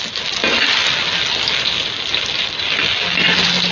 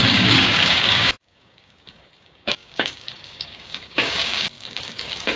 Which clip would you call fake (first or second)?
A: second